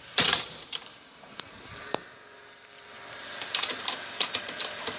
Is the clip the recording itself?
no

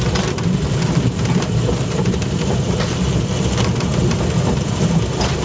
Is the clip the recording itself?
no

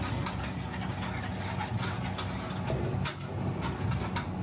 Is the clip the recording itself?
yes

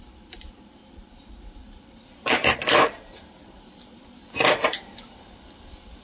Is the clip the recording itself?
no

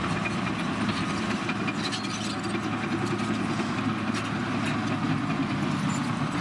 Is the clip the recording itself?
yes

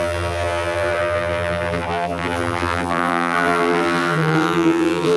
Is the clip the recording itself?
no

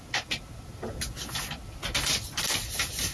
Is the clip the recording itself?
yes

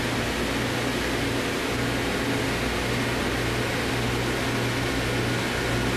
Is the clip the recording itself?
yes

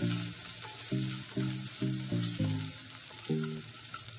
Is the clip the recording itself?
yes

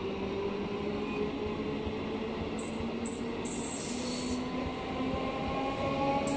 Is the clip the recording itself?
yes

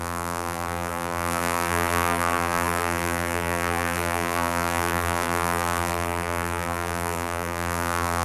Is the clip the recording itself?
no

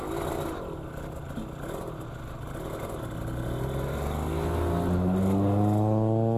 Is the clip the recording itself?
yes